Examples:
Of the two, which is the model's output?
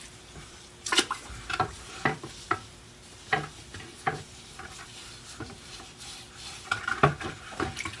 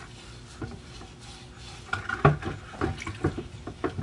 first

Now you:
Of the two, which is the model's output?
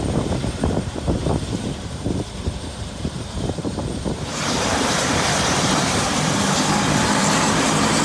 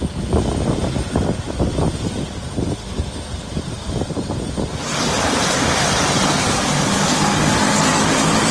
first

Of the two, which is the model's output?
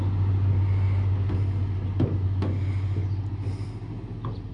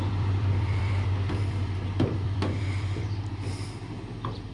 second